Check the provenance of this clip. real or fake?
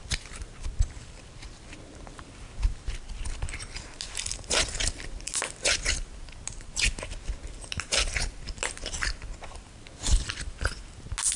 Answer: real